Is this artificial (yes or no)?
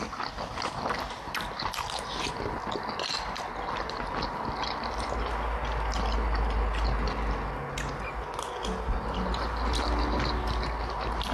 no